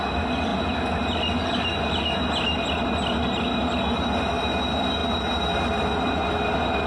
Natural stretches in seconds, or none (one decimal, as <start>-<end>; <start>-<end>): 0.0-6.9